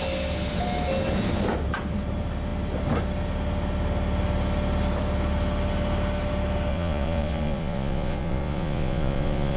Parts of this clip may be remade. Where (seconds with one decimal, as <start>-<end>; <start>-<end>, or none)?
6.7-9.6